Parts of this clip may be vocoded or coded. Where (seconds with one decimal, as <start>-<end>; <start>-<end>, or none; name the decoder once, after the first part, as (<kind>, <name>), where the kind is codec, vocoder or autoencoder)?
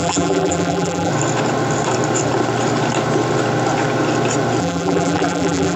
0.0-1.1 (vocoder, BigVGAN v2); 4.6-5.8